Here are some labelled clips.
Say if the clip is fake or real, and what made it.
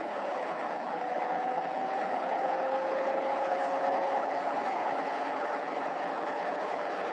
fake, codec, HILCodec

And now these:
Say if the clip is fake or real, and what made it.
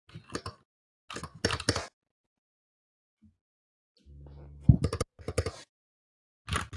real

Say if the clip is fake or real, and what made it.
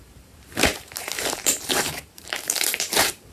fake, vocoder, BigVGAN v2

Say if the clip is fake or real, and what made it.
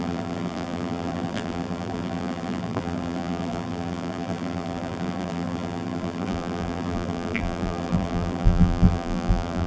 fake, vocoder, BigVGAN v2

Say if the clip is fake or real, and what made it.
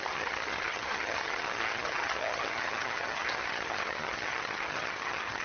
fake, vocoder, HiFi-GAN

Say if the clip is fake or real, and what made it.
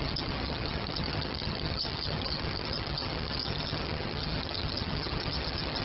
fake, vocoder, HiFi-GAN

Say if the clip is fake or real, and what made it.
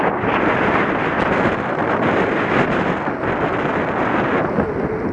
real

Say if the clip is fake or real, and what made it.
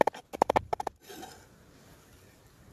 real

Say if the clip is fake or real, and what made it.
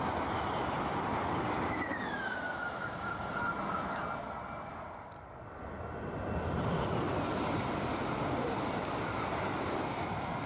real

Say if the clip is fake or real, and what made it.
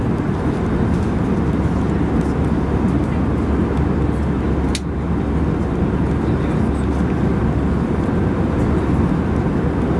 real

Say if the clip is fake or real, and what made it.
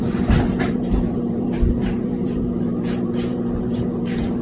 fake, vocoder, BigVGAN v2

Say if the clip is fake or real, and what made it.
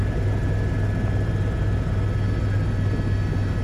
real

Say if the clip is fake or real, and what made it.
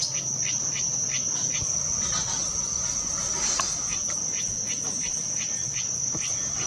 real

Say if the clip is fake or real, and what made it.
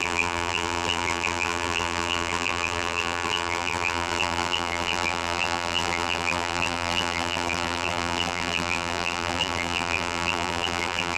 fake, vocoder, BigVGAN v2